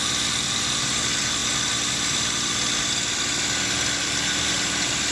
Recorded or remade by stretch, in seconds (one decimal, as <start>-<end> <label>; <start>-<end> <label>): 0.0-5.1 recorded